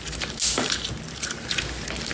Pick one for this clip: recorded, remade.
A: recorded